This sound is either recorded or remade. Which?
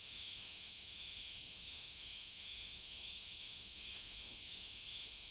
remade